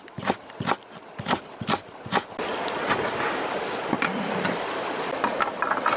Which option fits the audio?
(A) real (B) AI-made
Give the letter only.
A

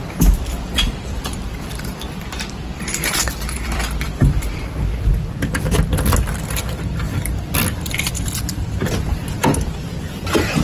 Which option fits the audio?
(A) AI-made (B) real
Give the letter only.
A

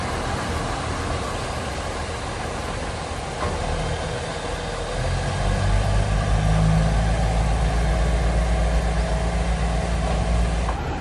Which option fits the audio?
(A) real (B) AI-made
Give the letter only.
A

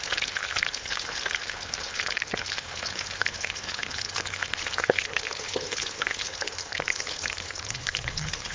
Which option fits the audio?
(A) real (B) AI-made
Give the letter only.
B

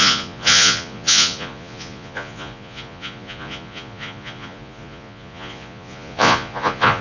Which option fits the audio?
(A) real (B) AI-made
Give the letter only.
B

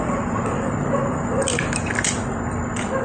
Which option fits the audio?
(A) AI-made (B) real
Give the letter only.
A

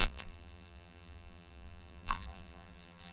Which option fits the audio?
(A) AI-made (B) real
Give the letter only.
A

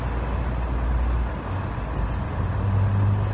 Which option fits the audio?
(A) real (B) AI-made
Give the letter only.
A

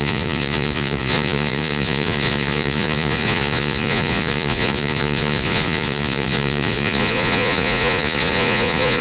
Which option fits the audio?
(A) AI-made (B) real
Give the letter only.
A